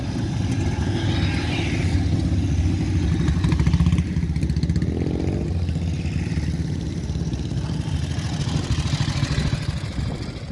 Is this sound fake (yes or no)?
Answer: no